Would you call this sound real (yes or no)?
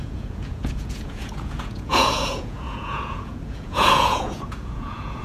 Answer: no